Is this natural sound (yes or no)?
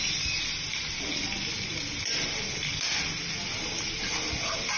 yes